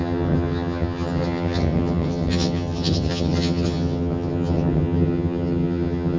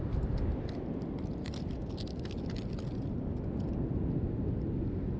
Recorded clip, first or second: second